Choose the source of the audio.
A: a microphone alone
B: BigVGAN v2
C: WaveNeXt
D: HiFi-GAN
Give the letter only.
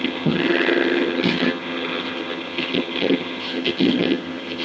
D